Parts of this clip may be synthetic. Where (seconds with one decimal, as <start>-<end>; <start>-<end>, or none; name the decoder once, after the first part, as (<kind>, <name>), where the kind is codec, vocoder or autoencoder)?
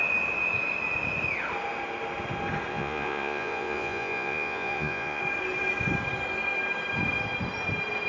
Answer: 2.7-5.2 (vocoder, Vocos)